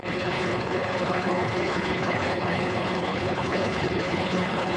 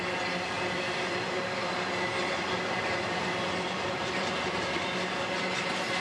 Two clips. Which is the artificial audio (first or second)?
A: first